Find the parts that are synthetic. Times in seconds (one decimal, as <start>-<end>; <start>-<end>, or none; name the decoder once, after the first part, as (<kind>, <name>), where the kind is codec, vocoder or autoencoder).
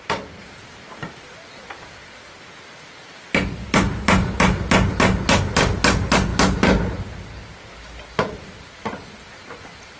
none